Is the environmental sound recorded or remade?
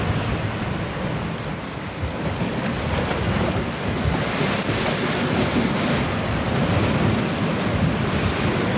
recorded